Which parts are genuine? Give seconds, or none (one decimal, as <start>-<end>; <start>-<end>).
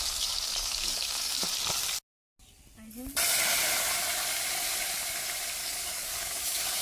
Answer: 1.5-5.6